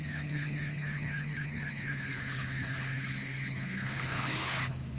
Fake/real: fake